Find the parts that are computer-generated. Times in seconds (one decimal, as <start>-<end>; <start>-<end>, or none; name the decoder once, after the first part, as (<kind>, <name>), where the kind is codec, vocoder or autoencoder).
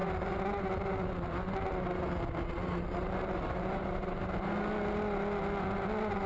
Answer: 2.6-4.5 (vocoder, BigVGAN v2)